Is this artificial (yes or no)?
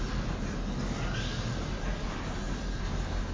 no